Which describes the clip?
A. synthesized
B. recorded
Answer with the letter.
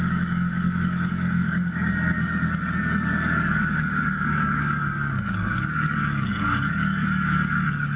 A